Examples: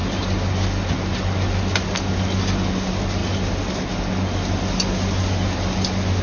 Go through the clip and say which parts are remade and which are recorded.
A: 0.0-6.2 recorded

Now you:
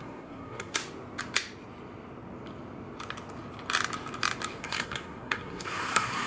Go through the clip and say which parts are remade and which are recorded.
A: 0.0-0.8 remade; 0.8-4.6 recorded; 4.6-6.3 remade

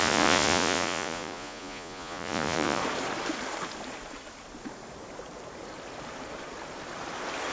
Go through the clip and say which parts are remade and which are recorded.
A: 0.0-2.8 remade; 2.8-7.5 recorded

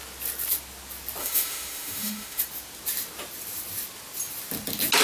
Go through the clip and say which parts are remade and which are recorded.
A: 0.0-1.2 recorded; 1.2-2.4 remade; 2.4-5.0 recorded

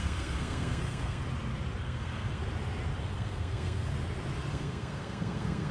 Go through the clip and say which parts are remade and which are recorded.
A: 0.0-1.2 remade; 1.2-1.8 recorded; 1.8-2.4 remade; 2.4-3.0 recorded; 3.0-3.9 remade; 3.9-4.5 recorded; 4.5-5.7 remade